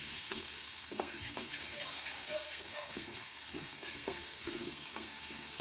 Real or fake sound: fake